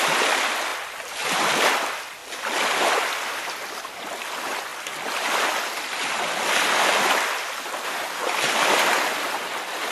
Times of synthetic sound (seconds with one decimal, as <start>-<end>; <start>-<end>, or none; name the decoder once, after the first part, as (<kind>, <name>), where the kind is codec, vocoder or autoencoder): 0.0-0.7 (vocoder, BigVGAN v2); 1.3-4.7; 6.7-9.9